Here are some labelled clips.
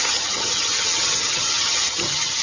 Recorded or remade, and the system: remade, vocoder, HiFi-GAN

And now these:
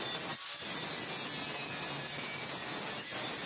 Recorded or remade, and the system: recorded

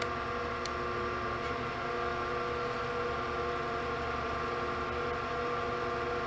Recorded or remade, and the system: recorded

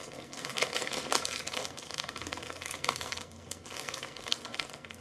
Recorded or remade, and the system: remade, codec, SNAC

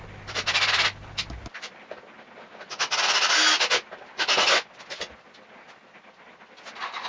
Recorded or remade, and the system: recorded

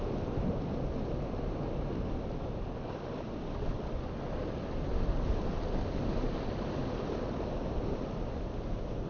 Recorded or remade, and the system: recorded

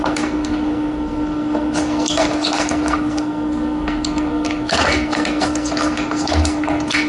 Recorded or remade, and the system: remade, codec, SNAC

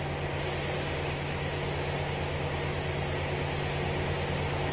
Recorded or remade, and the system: recorded